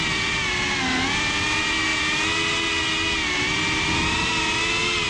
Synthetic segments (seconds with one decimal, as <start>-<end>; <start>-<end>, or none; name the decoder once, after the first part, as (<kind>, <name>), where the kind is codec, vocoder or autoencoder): none